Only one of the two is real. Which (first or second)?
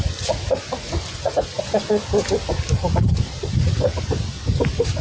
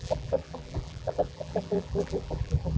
first